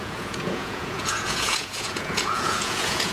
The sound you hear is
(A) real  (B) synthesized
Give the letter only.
B